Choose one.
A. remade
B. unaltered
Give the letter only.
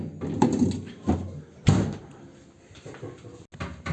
B